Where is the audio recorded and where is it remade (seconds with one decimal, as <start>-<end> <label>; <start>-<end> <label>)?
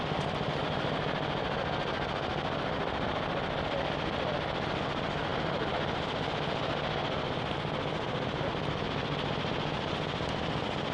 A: 0.0-2.3 recorded; 2.3-3.7 remade; 3.7-5.3 recorded; 5.3-6.3 remade; 6.3-10.9 recorded